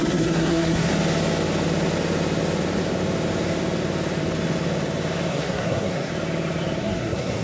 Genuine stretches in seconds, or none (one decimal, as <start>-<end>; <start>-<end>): 0.9-5.3; 6.1-6.8